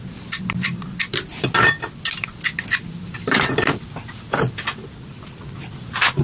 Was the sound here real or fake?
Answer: real